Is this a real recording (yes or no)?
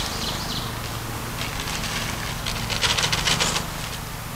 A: yes